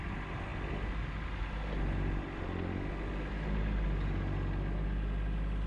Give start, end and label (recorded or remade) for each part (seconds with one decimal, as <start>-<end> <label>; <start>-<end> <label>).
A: 0.0-5.7 recorded